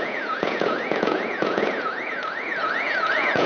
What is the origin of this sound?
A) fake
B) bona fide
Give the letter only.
A